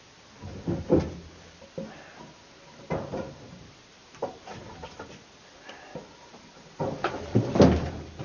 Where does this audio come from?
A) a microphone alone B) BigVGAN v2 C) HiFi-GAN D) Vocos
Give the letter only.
A